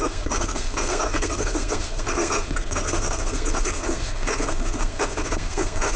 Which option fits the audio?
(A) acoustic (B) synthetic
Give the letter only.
B